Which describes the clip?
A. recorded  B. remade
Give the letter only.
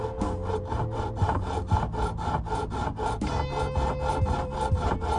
A